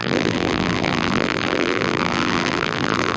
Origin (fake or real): fake